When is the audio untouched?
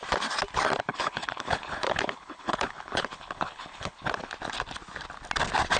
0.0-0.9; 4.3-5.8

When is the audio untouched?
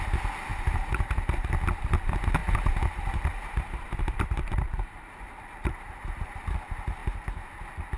0.0-0.5; 1.6-2.4; 6.5-8.0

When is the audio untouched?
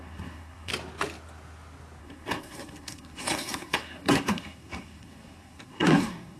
0.7-2.0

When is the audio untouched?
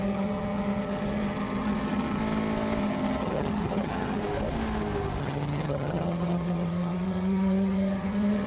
2.2-2.8; 4.2-5.2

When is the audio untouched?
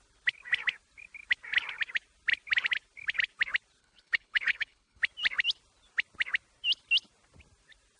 0.0-3.8; 5.0-8.0